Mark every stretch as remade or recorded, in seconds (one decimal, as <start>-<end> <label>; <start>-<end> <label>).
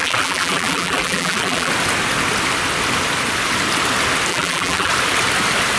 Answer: 0.0-1.7 remade; 1.7-4.3 recorded; 4.3-4.9 remade; 4.9-5.8 recorded